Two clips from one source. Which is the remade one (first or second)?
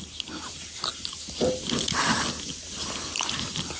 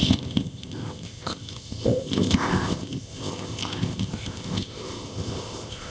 second